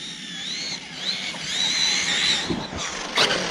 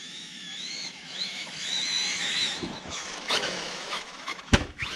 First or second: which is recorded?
first